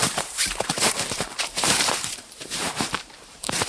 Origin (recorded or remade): remade